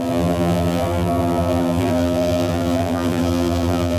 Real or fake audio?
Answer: fake